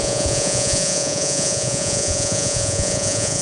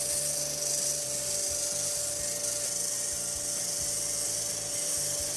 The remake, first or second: first